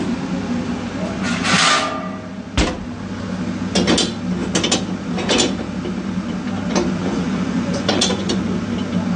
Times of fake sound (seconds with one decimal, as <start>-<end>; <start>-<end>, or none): 7.0-8.4